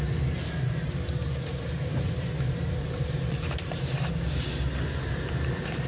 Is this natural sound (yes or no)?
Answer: no